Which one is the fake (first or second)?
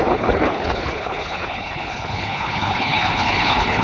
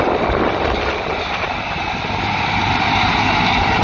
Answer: first